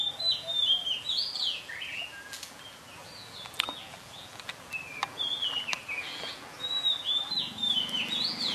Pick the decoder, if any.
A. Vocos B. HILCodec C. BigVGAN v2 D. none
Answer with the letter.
C